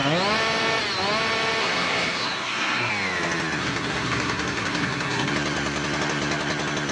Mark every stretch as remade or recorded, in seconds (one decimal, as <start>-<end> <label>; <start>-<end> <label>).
0.0-1.6 recorded; 1.6-2.9 remade; 2.9-3.6 recorded; 3.6-5.3 remade; 5.3-6.9 recorded